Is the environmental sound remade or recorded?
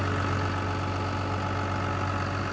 recorded